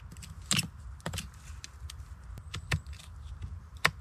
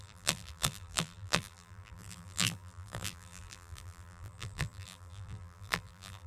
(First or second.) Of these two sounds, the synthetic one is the second